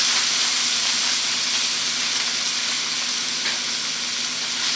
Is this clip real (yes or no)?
yes